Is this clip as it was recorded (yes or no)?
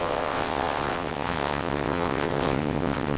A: no